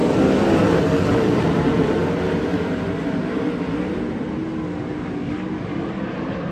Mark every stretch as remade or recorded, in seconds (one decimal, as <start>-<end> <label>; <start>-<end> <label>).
0.0-0.8 recorded; 0.8-2.0 remade; 2.0-5.9 recorded; 5.9-6.5 remade